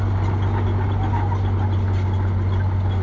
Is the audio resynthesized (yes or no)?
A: no